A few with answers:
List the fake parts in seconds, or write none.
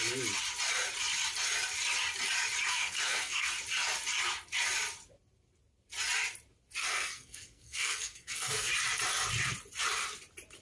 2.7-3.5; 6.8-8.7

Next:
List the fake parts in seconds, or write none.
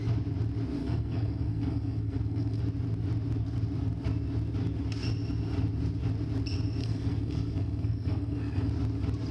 0.8-2.6; 6.8-8.7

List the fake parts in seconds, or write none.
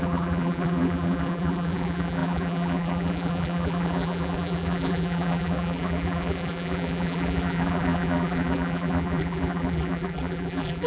0.0-10.9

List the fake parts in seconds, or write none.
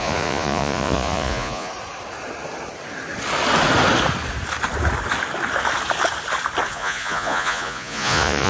0.0-1.7; 6.7-8.5